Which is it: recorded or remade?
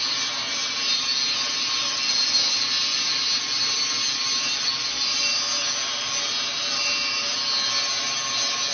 recorded